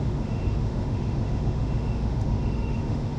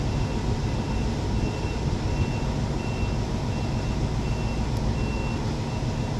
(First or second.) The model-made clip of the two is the first